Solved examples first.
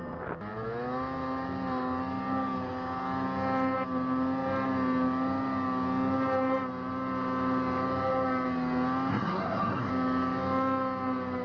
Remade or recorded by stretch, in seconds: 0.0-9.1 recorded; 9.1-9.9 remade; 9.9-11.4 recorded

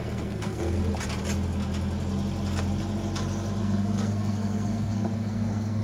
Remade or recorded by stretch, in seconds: 0.0-0.8 remade; 0.8-3.6 recorded; 3.6-5.8 remade

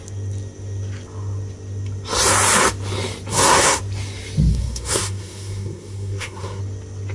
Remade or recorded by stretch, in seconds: 0.0-3.3 recorded; 3.3-3.8 remade; 3.8-4.5 recorded; 4.5-6.6 remade; 6.6-7.1 recorded

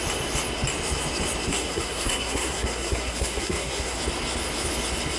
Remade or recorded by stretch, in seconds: 0.0-1.5 recorded; 1.5-4.0 remade; 4.0-5.2 recorded

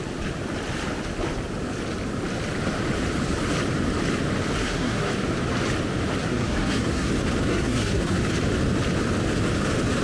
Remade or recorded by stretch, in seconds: 0.0-4.6 recorded; 4.6-5.1 remade; 5.1-6.2 recorded; 6.2-7.1 remade; 7.1-7.5 recorded; 7.5-8.2 remade; 8.2-10.0 recorded

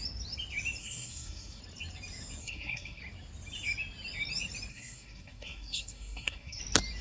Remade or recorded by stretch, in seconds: 0.0-0.8 recorded; 0.8-1.6 remade; 1.6-2.4 recorded; 2.4-3.0 remade; 3.0-4.7 recorded; 4.7-6.6 remade; 6.6-7.0 recorded